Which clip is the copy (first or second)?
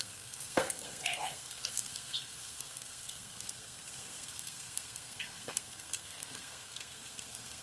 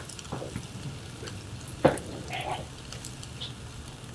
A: first